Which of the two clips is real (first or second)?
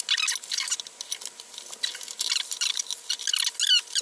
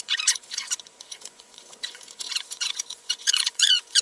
first